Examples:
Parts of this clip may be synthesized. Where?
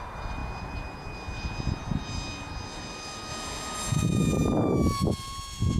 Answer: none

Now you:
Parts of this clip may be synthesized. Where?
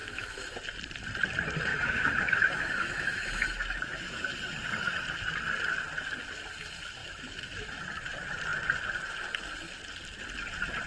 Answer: 0.0-0.6; 1.7-4.2; 7.0-7.8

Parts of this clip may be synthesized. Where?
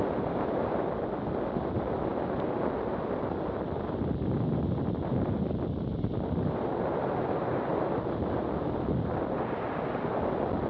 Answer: none